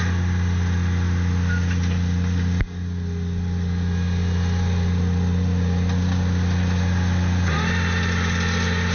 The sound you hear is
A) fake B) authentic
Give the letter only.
B